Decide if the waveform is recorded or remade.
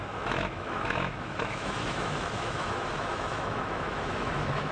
remade